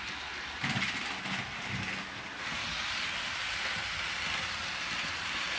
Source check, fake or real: real